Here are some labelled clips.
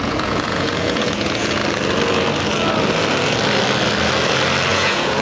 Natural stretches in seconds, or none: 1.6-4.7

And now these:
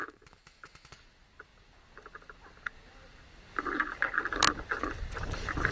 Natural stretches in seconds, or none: 0.9-5.7

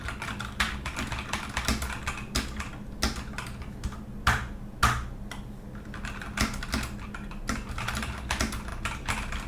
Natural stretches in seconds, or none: 0.0-9.5

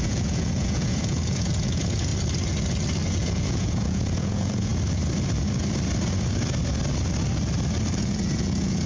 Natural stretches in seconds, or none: 2.1-3.1; 4.7-8.0

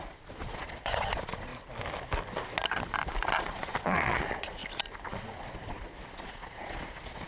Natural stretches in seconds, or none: 1.5-3.4; 4.6-5.1

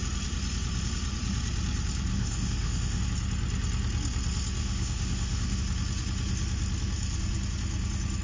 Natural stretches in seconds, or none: 0.0-2.1; 3.0-4.6; 5.6-8.2